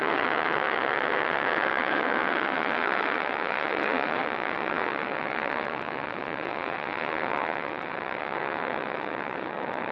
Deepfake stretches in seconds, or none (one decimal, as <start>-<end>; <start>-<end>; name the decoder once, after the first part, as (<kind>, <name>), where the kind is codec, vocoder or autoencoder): 0.0-9.9 (vocoder, WaveNeXt)